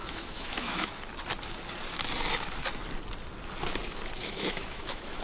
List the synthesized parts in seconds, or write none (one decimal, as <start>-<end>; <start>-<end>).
0.0-0.9; 4.2-5.2